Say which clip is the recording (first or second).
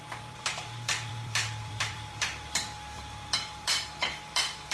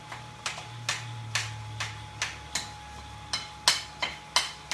second